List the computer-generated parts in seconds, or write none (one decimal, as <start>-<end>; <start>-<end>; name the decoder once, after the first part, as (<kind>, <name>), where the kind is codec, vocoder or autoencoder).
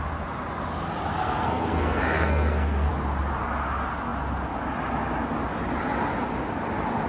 1.1-2.9 (codec, SNAC)